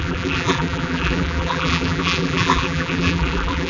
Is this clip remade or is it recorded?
remade